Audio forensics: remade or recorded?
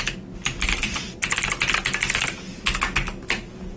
recorded